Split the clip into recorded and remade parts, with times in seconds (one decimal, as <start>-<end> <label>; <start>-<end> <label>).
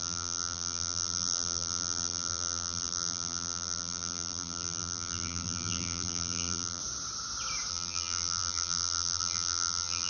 0.0-6.8 remade; 6.8-7.7 recorded; 7.7-10.1 remade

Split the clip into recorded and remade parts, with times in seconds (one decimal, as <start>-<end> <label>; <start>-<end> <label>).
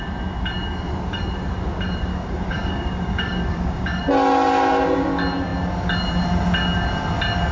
0.0-2.1 recorded; 2.1-4.0 remade; 4.0-7.5 recorded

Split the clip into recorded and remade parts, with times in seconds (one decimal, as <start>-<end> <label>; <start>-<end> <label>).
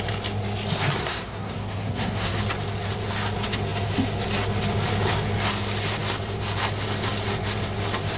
0.0-1.0 recorded; 1.0-2.4 remade; 2.4-8.2 recorded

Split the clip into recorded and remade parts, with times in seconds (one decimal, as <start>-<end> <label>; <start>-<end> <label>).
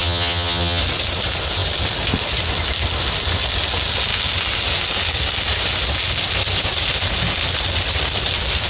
0.0-0.8 remade; 0.8-8.7 recorded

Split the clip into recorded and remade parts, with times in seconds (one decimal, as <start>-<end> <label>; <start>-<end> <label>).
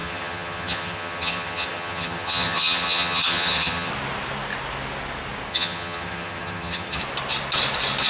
0.0-3.9 remade; 3.9-5.5 recorded; 5.5-7.0 remade; 7.0-8.1 recorded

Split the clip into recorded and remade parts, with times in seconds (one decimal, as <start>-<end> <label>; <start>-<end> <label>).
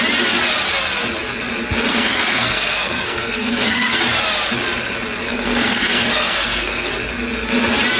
0.0-1.9 recorded; 1.9-4.0 remade; 4.0-5.2 recorded; 5.2-6.9 remade; 6.9-8.0 recorded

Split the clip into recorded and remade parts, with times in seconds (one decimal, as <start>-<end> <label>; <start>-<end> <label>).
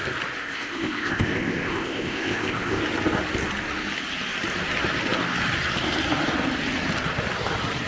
0.0-0.4 recorded; 0.4-2.8 remade; 2.8-7.9 recorded